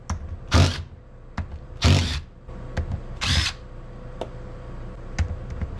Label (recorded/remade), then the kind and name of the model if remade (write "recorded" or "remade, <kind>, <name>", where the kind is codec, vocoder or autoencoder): recorded